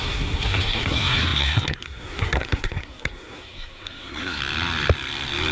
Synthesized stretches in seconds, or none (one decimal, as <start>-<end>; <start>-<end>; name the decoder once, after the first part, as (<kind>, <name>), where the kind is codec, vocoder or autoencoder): 0.0-4.4 (codec, SNAC)

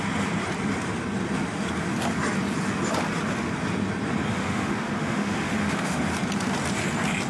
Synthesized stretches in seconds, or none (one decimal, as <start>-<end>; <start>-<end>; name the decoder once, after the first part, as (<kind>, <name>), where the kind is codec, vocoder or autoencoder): 4.3-6.0 (autoencoder, DAC-VAE)